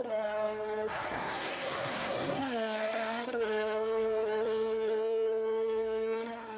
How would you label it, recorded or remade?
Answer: remade